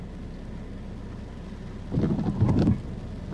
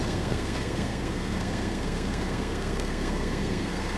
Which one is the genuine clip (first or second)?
first